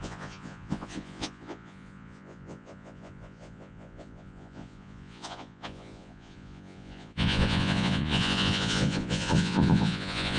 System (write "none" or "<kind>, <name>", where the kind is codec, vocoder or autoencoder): vocoder, Vocos